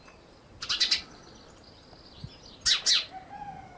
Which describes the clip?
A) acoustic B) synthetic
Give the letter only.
A